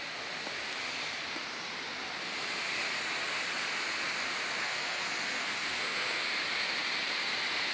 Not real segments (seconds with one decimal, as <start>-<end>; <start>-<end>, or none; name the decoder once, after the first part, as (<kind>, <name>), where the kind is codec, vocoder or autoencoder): 4.6-6.2 (codec, SNAC)